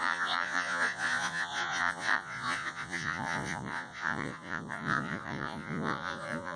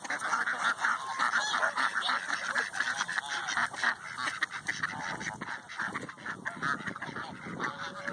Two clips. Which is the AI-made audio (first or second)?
first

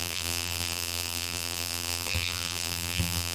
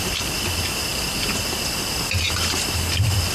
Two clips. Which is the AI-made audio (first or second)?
first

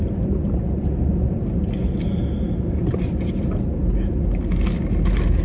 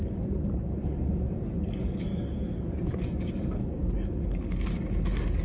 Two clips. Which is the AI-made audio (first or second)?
second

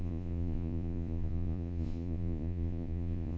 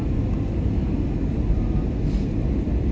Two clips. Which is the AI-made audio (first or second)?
first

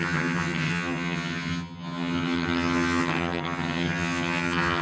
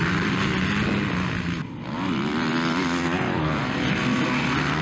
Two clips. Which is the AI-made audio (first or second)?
first